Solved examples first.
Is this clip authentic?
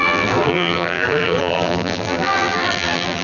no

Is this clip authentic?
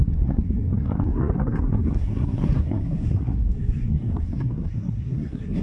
no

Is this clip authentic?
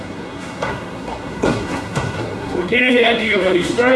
no